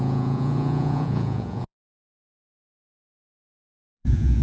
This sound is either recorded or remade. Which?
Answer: remade